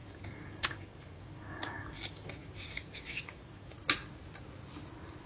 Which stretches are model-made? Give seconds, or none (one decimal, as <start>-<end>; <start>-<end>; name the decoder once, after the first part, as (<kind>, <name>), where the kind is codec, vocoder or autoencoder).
0.0-3.8 (codec, DAC)